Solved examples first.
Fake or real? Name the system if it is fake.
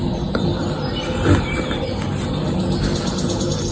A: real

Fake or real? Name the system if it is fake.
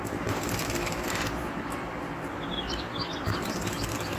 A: fake, vocoder, BigVGAN v2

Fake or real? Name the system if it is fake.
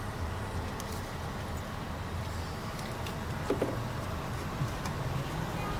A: real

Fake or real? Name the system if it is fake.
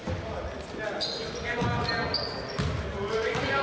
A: real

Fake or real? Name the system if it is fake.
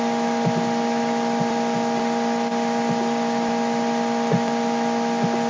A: real